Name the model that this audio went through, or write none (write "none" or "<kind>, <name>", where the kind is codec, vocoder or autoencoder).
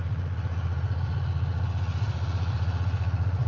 vocoder, Vocos